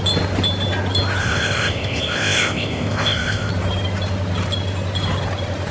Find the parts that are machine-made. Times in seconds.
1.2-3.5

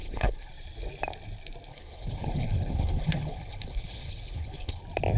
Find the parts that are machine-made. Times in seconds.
0.0-0.5; 1.7-4.8

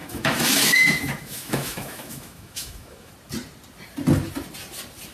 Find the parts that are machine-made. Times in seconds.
0.0-3.1

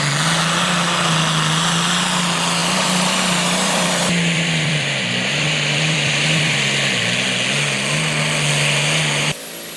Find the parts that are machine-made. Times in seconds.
2.6-6.6

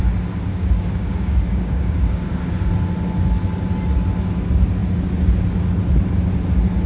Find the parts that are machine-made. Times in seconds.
0.5-2.7